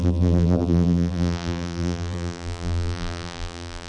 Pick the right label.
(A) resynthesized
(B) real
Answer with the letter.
A